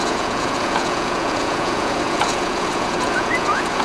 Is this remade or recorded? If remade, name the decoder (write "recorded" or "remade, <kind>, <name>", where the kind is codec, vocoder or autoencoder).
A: remade, vocoder, Vocos